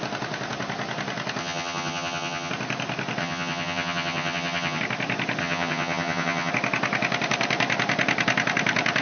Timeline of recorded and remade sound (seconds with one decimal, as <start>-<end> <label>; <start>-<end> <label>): 0.0-1.4 recorded; 1.4-2.5 remade; 2.5-3.2 recorded; 3.2-4.8 remade; 4.8-5.4 recorded; 5.4-6.5 remade; 6.5-9.0 recorded